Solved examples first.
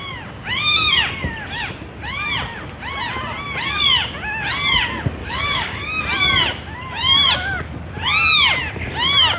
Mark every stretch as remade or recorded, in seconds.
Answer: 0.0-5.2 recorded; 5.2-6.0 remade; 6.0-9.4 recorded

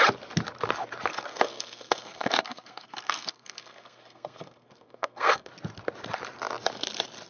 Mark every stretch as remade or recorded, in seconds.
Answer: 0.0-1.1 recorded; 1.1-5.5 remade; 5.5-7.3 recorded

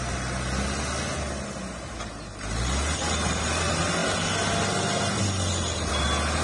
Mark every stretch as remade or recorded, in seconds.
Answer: 0.0-6.4 recorded

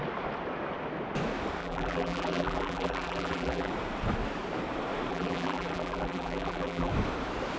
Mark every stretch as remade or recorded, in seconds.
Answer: 0.0-1.6 recorded; 1.6-3.7 remade; 3.7-5.1 recorded; 5.1-6.9 remade; 6.9-7.6 recorded

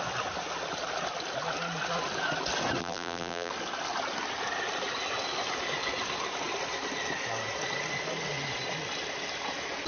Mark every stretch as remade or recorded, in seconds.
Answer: 0.0-2.8 recorded; 2.8-3.5 remade; 3.5-9.9 recorded

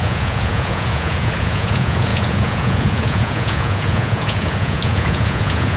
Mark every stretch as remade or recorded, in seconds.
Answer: 0.0-5.8 remade